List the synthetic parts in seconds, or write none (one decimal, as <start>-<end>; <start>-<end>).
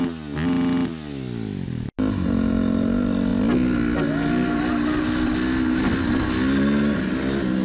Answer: none